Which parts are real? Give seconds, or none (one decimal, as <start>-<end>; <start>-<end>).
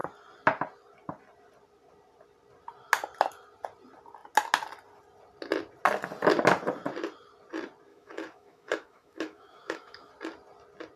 0.0-7.9; 10.1-11.0